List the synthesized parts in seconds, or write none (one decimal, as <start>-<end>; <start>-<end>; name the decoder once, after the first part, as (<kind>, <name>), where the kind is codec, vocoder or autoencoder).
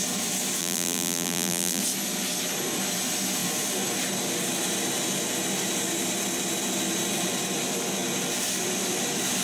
0.6-1.8 (vocoder, BigVGAN v2)